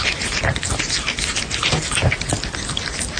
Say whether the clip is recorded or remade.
recorded